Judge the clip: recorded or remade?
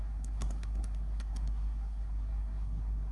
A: remade